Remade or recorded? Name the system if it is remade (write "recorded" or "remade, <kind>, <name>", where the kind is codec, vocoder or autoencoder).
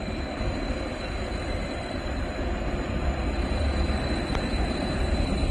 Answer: recorded